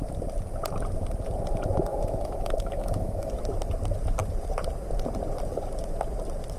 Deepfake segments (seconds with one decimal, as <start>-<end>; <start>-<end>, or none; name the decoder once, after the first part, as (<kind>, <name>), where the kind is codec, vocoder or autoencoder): 1.9-3.3 (autoencoder, DAC-VAE)